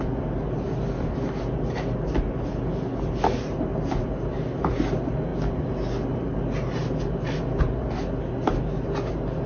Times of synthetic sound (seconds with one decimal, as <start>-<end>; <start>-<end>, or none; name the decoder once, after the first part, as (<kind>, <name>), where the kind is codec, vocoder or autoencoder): none